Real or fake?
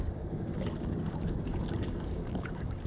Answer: fake